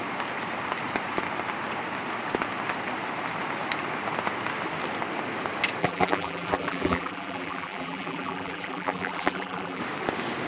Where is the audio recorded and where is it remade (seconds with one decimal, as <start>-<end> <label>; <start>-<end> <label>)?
0.0-5.8 recorded; 5.8-9.8 remade; 9.8-10.5 recorded